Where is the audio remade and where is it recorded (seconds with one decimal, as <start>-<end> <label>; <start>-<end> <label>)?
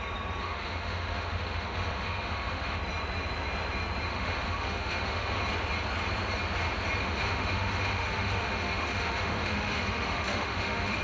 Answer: 0.0-0.4 recorded; 0.4-2.8 remade; 2.8-4.1 recorded; 4.1-5.4 remade; 5.4-7.0 recorded; 7.0-11.0 remade